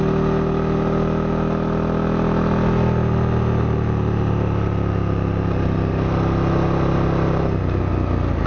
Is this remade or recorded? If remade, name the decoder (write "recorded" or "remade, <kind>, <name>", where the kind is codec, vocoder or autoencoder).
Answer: recorded